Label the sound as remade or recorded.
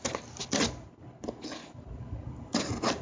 recorded